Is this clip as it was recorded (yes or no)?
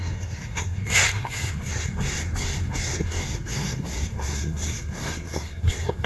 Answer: no